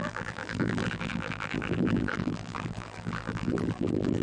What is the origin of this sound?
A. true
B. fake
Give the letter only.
B